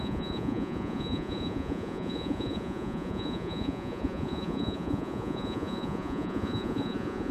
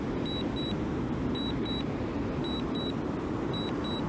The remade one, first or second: first